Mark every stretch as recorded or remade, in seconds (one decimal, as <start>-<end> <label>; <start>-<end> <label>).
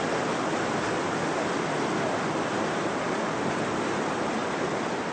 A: 0.0-5.1 recorded